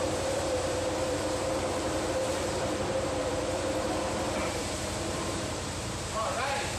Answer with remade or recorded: remade